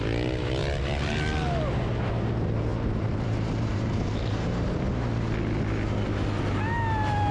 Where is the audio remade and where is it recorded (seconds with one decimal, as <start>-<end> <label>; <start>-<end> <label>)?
0.0-2.7 recorded; 2.7-4.7 remade; 4.7-7.3 recorded